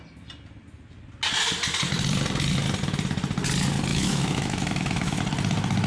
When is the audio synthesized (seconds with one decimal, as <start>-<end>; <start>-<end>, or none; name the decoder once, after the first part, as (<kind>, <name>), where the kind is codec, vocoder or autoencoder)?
3.9-5.2 (autoencoder, DAC-VAE)

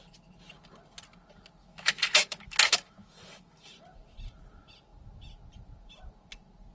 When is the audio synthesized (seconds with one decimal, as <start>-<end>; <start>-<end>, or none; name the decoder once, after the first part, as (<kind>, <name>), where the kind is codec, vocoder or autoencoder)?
1.6-3.7 (autoencoder, DAC-VAE)

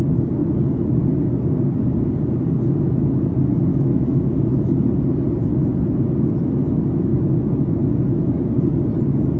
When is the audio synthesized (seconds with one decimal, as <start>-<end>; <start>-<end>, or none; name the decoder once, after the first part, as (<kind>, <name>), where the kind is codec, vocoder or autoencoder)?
3.7-4.7 (autoencoder, DAC-VAE)

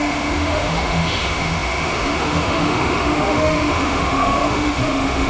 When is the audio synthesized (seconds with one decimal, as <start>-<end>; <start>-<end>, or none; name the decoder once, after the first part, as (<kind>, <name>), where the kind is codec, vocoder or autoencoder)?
0.0-5.3 (autoencoder, DAC-VAE)

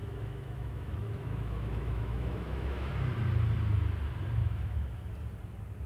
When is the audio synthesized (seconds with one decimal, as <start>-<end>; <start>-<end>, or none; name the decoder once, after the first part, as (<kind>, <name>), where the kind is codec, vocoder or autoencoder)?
0.0-2.9 (autoencoder, DAC-VAE); 4.4-5.1

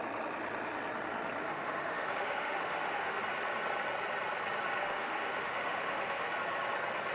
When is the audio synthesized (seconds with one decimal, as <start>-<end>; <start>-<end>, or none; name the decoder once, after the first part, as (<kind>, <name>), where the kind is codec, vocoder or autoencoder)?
1.4-3.2 (autoencoder, DAC-VAE); 4.8-6.3

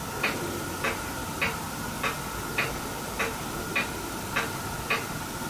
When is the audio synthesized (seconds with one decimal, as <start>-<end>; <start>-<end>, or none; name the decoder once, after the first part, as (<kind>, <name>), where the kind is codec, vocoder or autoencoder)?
none